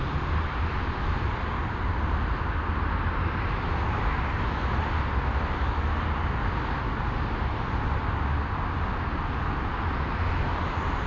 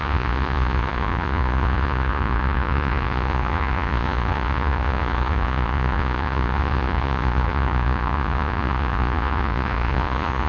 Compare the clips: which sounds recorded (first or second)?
first